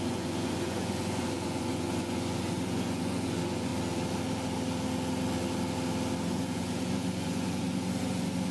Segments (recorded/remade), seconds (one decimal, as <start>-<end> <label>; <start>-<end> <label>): 0.0-3.7 remade; 3.7-6.3 recorded; 6.3-8.5 remade